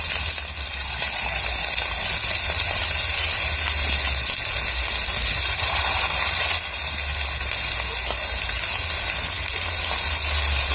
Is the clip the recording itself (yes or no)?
yes